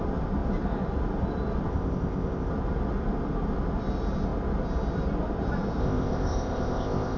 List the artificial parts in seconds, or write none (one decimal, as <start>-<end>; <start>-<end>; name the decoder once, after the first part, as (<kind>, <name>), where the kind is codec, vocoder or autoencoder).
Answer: 1.7-2.5 (codec, ZipCodec); 5.8-7.2